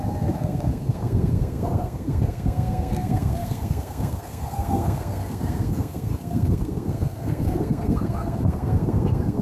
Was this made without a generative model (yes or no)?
no